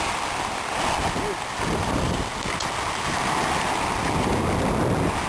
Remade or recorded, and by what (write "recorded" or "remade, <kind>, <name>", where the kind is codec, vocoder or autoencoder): recorded